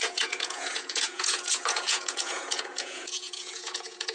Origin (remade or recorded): remade